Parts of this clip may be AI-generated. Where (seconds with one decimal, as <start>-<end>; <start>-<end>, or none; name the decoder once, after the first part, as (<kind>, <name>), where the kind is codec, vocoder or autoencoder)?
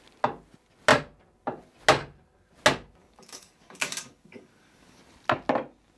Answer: 3.0-5.0 (codec, DAC)